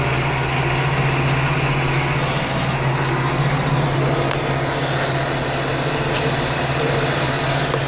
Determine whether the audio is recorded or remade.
recorded